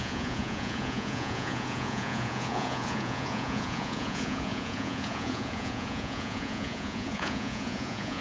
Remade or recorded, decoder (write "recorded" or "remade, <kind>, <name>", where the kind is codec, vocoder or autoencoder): remade, vocoder, Vocos